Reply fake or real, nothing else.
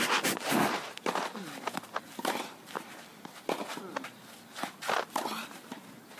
fake